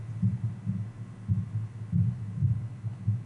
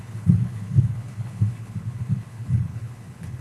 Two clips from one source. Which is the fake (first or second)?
second